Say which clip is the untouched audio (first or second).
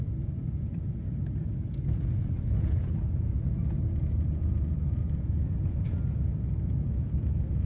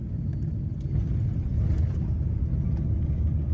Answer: second